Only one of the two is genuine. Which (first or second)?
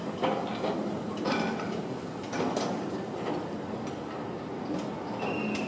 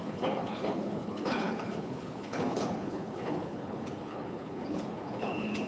first